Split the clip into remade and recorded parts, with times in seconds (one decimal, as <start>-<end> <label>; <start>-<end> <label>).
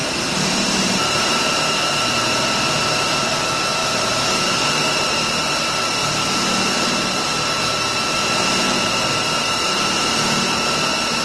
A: 0.0-3.4 remade; 3.4-3.8 recorded; 3.8-5.6 remade; 5.6-11.2 recorded